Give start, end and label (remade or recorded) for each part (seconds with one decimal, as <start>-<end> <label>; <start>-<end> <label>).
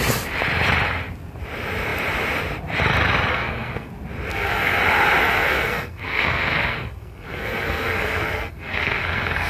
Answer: 0.0-3.3 recorded; 3.3-3.9 remade; 3.9-4.3 recorded; 4.3-4.8 remade; 4.8-5.2 recorded; 5.2-9.5 remade